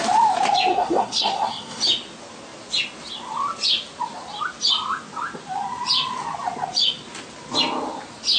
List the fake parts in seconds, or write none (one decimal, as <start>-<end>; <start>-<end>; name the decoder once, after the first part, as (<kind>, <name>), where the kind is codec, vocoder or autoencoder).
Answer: 0.7-1.8 (codec, SNAC)